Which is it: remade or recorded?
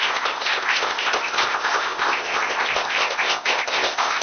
remade